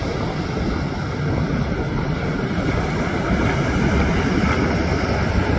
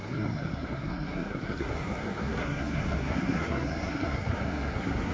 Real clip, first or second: first